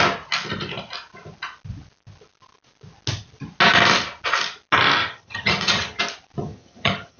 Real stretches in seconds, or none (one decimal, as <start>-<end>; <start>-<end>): 0.0-5.0; 6.0-6.4